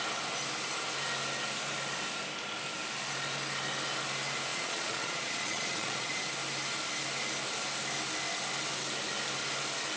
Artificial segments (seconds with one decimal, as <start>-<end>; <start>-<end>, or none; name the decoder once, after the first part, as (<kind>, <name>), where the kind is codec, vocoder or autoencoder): 4.5-6.2 (vocoder, Vocos)